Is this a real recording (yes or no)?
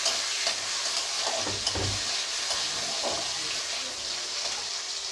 yes